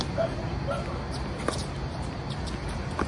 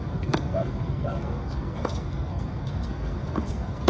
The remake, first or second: second